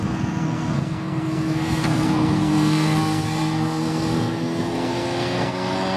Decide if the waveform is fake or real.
fake